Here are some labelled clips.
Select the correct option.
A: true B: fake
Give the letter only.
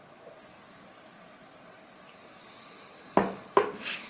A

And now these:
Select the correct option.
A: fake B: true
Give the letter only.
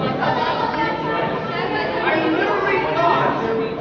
B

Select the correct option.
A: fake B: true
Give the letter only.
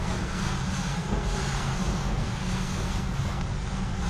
A